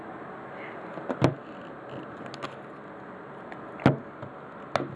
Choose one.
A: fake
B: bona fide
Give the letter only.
B